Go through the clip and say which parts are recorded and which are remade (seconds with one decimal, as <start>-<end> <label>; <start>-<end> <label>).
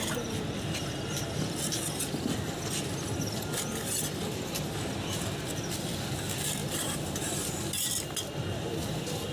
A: 0.0-6.6 recorded; 6.6-7.5 remade; 7.5-9.3 recorded